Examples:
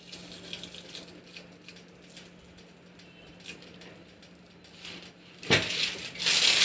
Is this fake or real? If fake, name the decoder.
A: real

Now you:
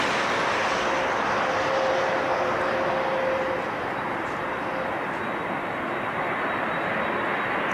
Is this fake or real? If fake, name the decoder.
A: real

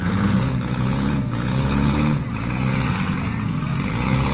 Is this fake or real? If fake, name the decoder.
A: fake, vocoder, Vocos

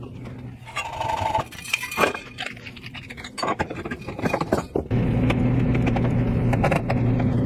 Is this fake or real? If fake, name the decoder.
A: fake, vocoder, BigVGAN v2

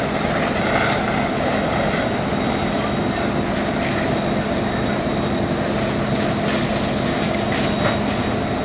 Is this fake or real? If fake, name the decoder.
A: real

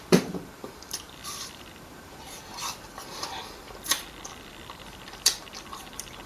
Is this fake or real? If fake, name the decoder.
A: fake, vocoder, BigVGAN v2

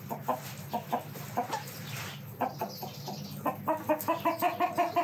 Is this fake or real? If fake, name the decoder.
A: real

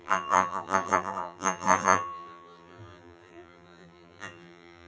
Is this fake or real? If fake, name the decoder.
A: fake, vocoder, BigVGAN v2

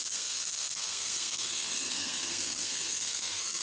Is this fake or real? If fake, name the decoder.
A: fake, codec, SNAC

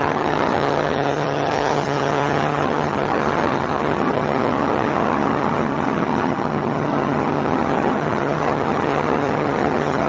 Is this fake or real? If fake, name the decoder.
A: fake, vocoder, HiFi-GAN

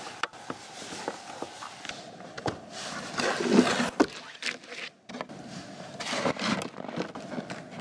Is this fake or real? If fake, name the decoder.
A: real